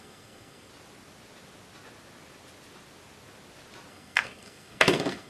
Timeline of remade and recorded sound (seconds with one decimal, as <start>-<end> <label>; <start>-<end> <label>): 0.0-0.7 remade; 0.7-3.9 recorded; 3.9-5.3 remade